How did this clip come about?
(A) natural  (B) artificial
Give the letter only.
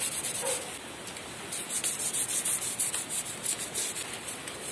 A